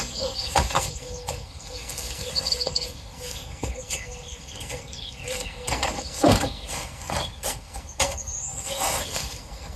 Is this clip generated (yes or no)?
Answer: yes